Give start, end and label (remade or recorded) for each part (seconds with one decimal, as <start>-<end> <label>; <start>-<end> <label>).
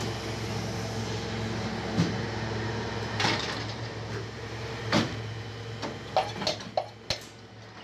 0.0-1.8 recorded; 1.8-4.8 remade; 4.8-7.8 recorded